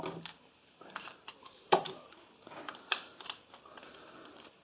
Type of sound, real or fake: fake